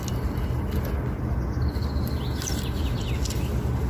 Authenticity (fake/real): real